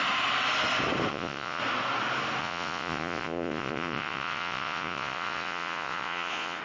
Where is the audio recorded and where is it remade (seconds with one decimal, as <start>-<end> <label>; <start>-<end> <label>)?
0.0-1.1 recorded; 1.1-1.6 remade; 1.6-2.4 recorded; 2.4-6.6 remade